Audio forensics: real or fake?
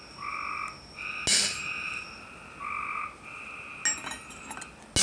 real